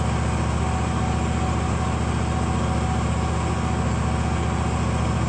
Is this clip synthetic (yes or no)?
no